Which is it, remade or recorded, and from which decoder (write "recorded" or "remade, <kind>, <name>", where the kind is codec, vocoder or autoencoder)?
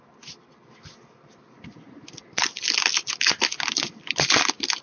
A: recorded